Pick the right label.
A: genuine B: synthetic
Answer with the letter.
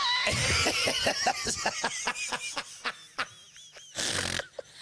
A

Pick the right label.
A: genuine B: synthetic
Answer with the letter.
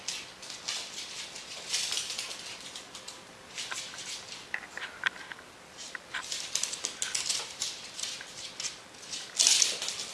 A